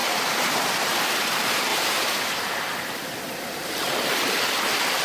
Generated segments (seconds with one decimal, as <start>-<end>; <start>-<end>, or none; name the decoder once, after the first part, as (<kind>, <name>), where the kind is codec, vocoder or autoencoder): 1.7-3.8 (vocoder, BigVGAN v2)